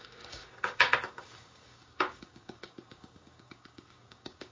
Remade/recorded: remade